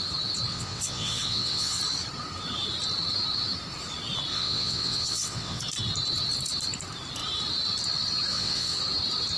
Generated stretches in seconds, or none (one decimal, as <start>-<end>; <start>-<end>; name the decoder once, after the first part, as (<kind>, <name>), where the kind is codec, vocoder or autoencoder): 0.5-1.8 (vocoder, WaveNeXt); 4.3-5.6; 8.3-8.8